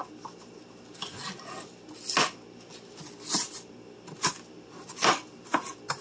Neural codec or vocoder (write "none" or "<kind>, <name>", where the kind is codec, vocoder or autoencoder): none